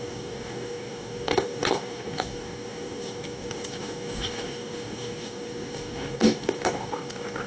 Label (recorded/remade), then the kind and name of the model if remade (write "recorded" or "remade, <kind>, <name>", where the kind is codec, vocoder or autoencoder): remade, codec, DAC